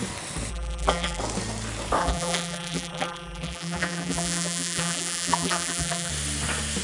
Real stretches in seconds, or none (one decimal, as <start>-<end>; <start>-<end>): 0.0-0.5; 1.2-2.0; 6.1-6.8